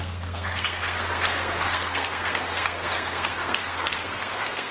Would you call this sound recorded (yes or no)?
no